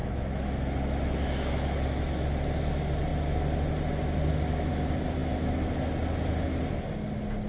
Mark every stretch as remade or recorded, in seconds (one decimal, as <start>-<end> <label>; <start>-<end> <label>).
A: 0.0-2.3 remade; 2.3-5.2 recorded; 5.2-5.7 remade; 5.7-7.5 recorded